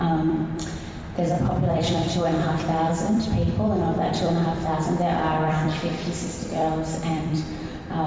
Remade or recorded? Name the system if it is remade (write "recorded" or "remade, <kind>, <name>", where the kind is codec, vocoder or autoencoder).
remade, vocoder, BigVGAN v2